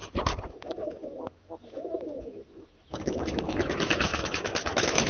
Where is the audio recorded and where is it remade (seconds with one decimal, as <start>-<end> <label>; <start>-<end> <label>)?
0.0-0.5 recorded; 0.5-5.1 remade